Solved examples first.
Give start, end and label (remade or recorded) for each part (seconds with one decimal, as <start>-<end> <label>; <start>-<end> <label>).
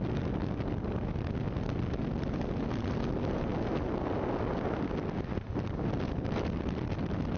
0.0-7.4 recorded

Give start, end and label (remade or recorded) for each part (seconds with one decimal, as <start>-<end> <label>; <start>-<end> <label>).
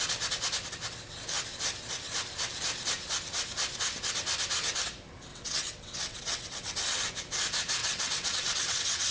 0.0-5.3 recorded; 5.3-7.1 remade; 7.1-7.8 recorded; 7.8-9.1 remade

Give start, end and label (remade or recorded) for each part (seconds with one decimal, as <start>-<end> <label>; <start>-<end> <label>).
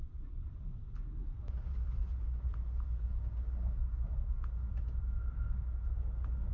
0.0-2.5 remade; 2.5-6.5 recorded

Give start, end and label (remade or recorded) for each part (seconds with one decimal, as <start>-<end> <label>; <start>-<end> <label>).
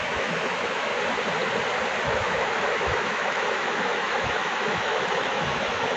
0.0-0.9 remade; 0.9-2.0 recorded; 2.0-6.0 remade